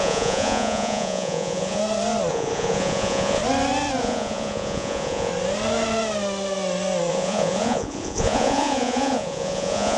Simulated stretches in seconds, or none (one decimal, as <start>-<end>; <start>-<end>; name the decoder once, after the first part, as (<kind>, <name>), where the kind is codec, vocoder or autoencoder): 0.0-1.8 (vocoder, Vocos); 2.3-3.4; 4.0-5.3; 7.1-10.0